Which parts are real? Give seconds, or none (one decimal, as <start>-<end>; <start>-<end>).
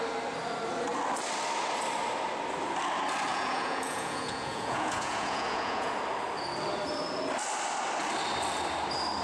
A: 0.0-3.3; 5.9-9.2